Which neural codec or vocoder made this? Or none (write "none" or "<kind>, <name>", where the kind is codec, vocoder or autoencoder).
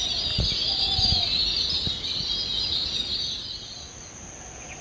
none